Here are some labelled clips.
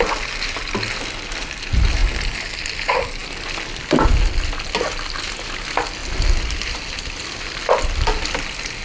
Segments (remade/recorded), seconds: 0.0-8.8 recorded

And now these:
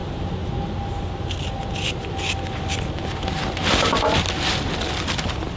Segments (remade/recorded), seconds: 0.0-5.6 recorded